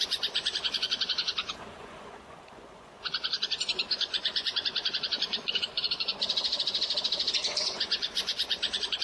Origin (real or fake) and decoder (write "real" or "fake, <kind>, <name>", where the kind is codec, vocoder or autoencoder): fake, vocoder, Vocos